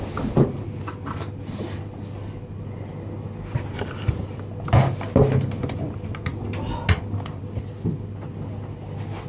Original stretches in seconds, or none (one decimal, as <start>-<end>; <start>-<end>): 0.0-9.3